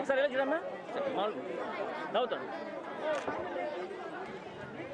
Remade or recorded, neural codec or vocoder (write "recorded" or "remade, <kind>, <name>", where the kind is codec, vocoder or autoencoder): recorded